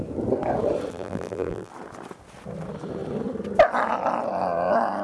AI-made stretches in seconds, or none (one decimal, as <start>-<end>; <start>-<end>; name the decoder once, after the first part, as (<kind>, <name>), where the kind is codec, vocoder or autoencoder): 0.9-1.7 (vocoder, BigVGAN v2)